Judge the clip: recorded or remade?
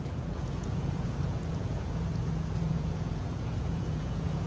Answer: remade